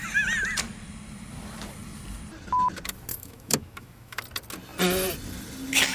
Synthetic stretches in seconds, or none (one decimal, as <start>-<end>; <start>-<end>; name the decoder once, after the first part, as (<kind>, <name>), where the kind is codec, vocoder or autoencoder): 3.1-4.2 (autoencoder, DAC-VAE)